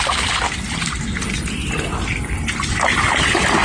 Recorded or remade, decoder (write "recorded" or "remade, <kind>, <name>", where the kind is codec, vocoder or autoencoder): recorded